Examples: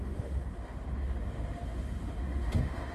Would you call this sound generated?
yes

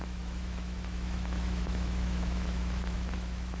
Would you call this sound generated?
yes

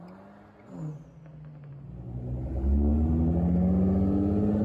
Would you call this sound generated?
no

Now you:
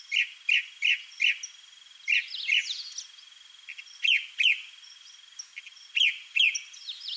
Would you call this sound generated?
no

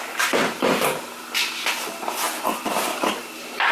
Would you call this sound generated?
no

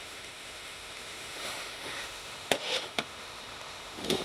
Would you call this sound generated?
yes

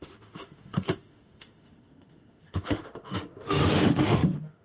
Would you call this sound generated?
yes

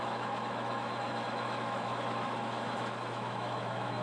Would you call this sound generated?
yes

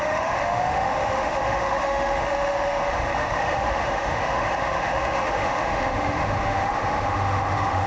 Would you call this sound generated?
yes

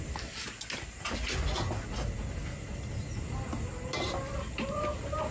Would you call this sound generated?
no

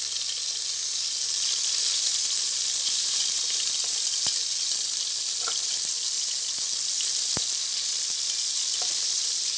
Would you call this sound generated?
no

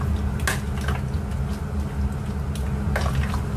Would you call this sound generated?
no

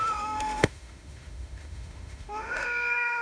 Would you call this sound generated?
yes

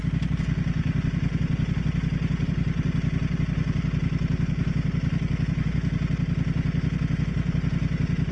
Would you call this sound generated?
no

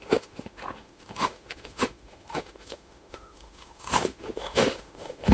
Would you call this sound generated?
yes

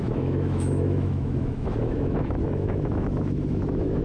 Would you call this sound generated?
yes